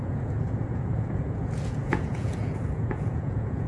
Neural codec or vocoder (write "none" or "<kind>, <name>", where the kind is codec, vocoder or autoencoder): vocoder, Vocos